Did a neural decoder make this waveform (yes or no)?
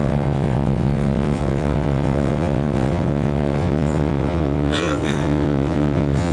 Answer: yes